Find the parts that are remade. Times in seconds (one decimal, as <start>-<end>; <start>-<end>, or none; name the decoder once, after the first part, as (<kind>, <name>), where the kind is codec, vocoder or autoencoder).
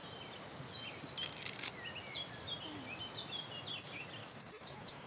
4.2-5.1 (autoencoder, DAC-VAE)